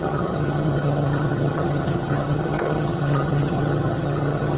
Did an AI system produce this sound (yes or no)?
yes